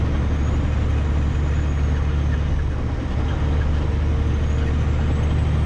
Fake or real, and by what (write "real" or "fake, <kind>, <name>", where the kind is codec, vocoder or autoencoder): real